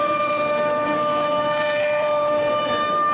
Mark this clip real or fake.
fake